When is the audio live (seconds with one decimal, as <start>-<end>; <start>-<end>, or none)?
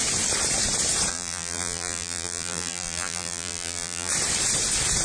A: 0.0-1.1; 4.1-5.0